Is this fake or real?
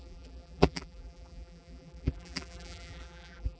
fake